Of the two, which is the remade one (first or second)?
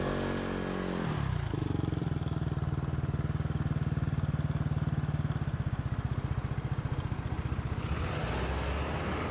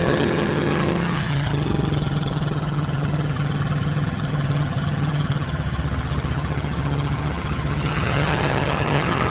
second